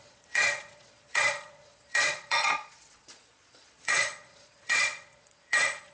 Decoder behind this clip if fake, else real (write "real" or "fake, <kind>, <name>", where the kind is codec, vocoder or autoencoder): fake, vocoder, Vocos